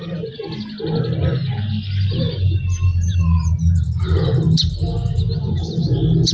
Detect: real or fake real